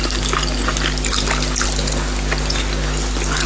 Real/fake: real